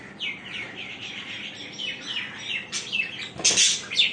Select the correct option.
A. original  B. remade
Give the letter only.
A